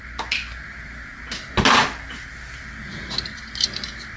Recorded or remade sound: recorded